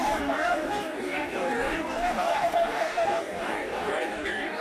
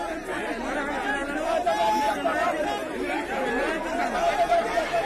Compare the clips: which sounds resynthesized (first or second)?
first